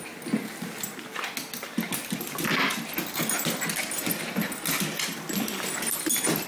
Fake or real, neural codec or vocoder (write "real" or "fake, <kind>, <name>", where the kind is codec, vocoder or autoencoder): real